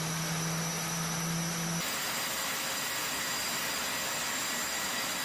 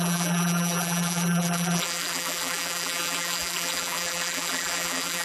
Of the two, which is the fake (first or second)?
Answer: second